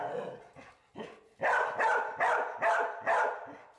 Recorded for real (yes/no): yes